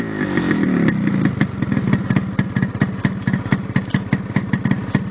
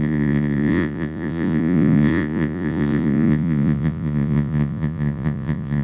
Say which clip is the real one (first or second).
first